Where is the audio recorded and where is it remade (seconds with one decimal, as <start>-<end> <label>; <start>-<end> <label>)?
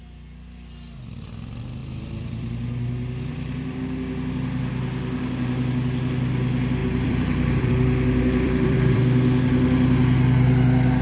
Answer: 0.0-1.8 recorded; 1.8-3.8 remade; 3.8-6.8 recorded; 6.8-9.0 remade; 9.0-11.0 recorded